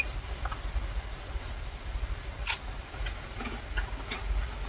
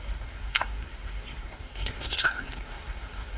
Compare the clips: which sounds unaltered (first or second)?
first